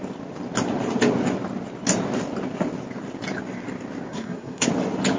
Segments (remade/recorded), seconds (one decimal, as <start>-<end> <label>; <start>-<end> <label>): 0.0-4.1 recorded; 4.1-4.7 remade; 4.7-5.2 recorded